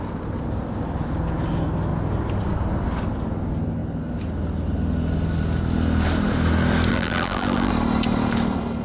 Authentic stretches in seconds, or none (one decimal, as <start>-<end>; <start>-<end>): 0.0-6.9; 7.7-8.8